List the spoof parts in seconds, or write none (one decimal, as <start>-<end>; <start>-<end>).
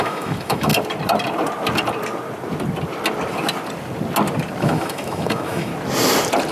0.0-0.7; 4.6-5.7